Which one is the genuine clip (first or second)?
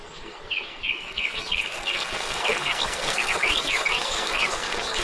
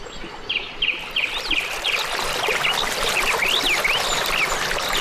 second